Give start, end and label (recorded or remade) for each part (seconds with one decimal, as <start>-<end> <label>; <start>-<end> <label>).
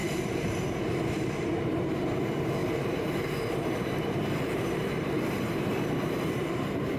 0.0-7.0 remade